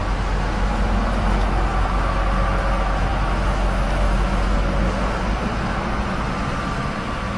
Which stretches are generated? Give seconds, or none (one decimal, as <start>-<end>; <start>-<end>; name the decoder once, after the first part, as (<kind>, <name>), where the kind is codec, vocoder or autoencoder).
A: none